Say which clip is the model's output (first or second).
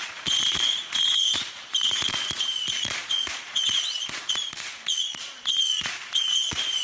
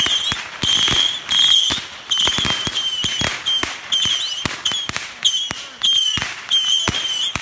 first